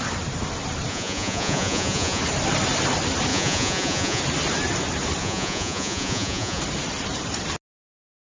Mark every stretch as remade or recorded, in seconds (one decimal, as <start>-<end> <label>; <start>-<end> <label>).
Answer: 0.0-0.9 recorded; 0.9-2.2 remade; 2.2-3.3 recorded; 3.3-4.2 remade; 4.2-5.2 recorded; 5.2-6.6 remade; 6.6-8.3 recorded